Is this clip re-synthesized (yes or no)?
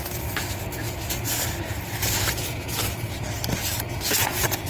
no